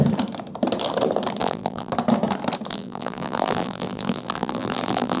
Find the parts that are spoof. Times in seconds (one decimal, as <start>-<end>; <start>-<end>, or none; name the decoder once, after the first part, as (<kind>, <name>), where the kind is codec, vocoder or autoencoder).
1.4-1.9 (vocoder, BigVGAN v2); 2.7-5.2